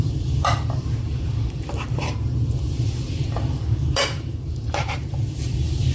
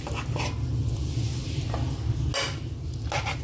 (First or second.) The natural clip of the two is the second